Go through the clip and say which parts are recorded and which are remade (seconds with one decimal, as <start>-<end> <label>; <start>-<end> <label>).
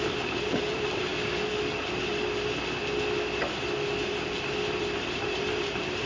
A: 0.0-1.1 remade; 1.1-4.8 recorded; 4.8-6.1 remade